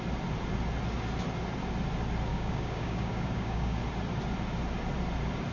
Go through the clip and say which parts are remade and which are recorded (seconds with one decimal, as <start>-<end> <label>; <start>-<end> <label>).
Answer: 0.0-2.3 recorded; 2.3-3.8 remade; 3.8-5.5 recorded